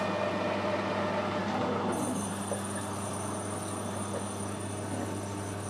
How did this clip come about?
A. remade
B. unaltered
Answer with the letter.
B